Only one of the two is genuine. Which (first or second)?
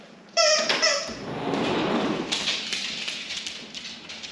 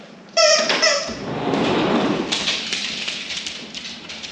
first